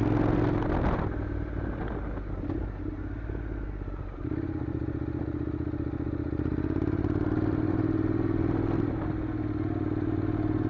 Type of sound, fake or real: real